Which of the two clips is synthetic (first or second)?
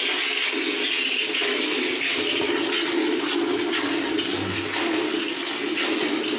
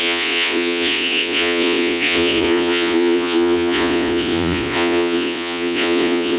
second